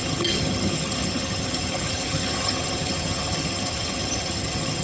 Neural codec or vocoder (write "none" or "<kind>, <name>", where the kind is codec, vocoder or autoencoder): vocoder, HiFi-GAN